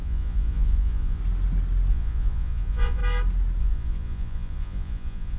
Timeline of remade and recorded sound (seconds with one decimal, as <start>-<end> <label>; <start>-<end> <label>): 0.0-1.2 remade; 1.2-1.9 recorded; 1.9-3.0 remade; 3.0-3.6 recorded; 3.6-5.4 remade